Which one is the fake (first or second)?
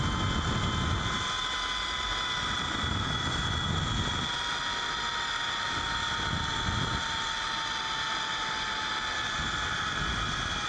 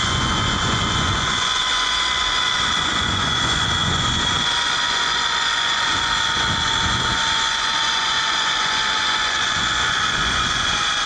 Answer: second